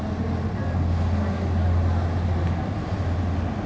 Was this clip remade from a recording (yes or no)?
no